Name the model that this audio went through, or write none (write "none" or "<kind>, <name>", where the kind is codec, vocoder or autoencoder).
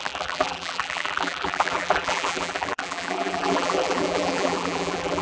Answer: vocoder, BigVGAN v2